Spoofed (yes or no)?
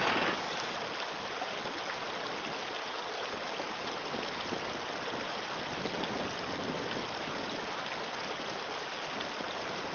no